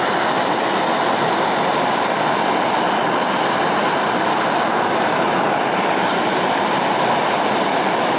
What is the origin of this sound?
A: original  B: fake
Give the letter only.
A